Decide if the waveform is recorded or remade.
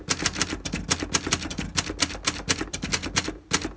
recorded